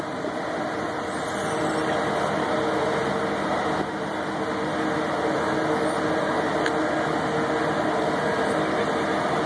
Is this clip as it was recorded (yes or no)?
yes